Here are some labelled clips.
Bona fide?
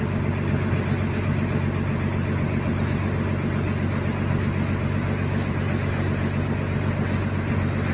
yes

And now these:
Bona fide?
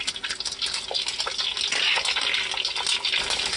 yes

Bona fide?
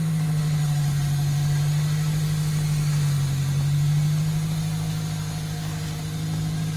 yes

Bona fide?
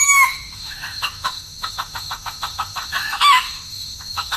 no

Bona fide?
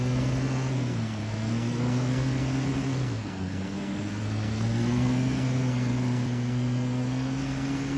no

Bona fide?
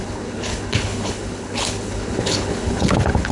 no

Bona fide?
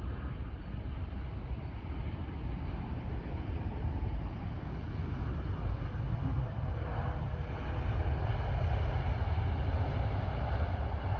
yes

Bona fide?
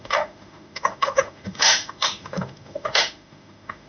no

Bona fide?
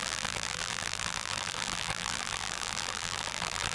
no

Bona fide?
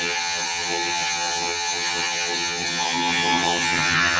no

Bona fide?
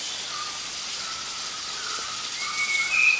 yes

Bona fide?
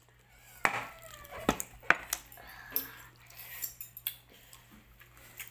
yes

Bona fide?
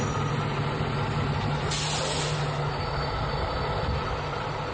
yes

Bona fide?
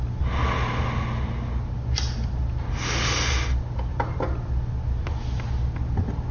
yes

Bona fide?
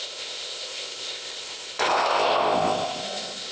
no